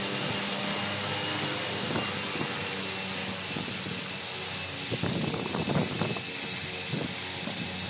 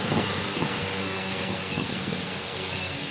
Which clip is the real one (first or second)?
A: first